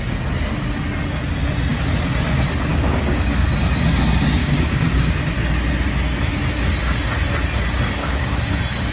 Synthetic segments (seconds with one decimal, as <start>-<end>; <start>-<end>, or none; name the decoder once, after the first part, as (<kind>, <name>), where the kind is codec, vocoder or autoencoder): 2.7-3.5 (codec, DAC); 4.4-5.1; 8.0-8.5